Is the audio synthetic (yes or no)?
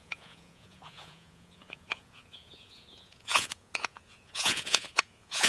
yes